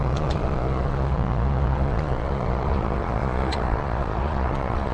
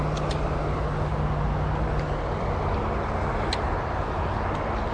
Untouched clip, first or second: second